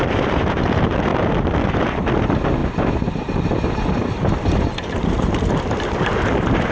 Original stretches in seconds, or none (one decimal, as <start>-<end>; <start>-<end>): none